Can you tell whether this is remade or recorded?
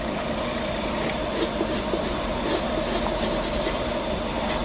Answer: recorded